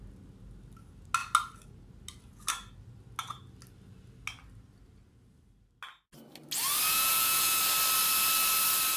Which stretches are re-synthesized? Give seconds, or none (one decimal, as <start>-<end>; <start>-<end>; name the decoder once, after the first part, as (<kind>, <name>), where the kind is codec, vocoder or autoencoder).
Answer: 6.9-7.6 (vocoder, Vocos)